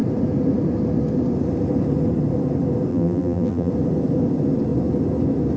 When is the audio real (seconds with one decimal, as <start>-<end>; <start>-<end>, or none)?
0.0-2.9; 3.7-5.6